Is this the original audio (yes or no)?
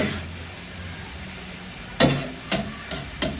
yes